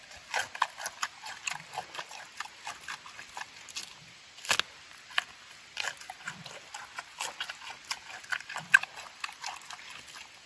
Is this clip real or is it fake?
real